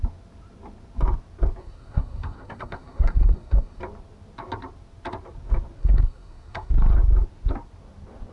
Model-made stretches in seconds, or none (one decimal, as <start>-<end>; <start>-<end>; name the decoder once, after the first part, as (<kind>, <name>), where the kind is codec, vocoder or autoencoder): 1.6-3.8 (codec, SNAC); 5.8-6.7